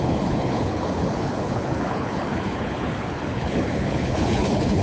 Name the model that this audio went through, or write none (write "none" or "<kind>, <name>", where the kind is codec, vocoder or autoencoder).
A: codec, HILCodec